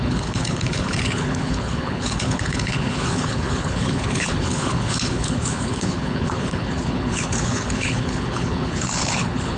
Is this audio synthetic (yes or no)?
yes